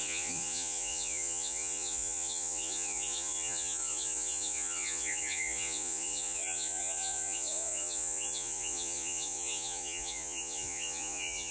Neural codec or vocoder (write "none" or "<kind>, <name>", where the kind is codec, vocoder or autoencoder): vocoder, Vocos